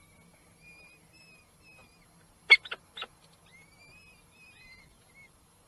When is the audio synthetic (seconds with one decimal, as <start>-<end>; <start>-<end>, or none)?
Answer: none